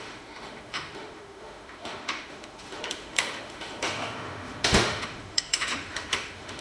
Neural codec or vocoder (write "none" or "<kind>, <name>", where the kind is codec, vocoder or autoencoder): autoencoder, DAC-VAE